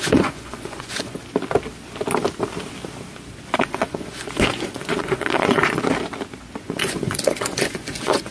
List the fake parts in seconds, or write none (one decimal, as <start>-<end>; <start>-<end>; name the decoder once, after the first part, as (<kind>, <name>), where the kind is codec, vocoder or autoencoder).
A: 0.0-1.2 (vocoder, Vocos); 3.6-5.8; 6.6-8.3